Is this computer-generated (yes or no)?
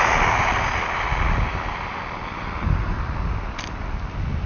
no